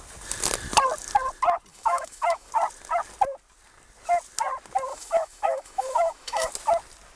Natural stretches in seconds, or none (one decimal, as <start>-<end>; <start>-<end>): 0.0-1.7; 2.5-4.9; 6.5-7.2